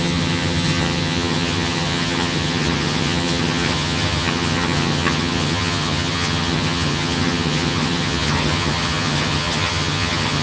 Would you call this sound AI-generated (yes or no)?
yes